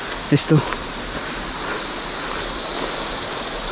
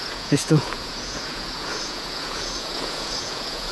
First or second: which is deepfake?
second